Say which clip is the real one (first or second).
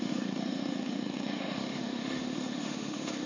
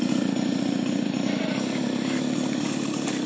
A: second